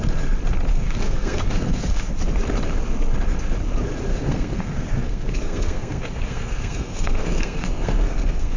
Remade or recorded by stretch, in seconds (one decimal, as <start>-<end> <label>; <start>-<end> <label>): 0.0-0.7 recorded; 0.7-2.1 remade; 2.1-4.1 recorded; 4.1-8.6 remade